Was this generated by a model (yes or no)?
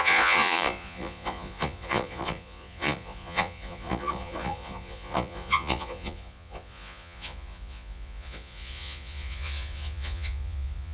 yes